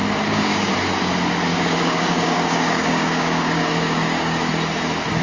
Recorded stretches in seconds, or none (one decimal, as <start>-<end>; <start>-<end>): 0.7-1.5; 4.5-5.2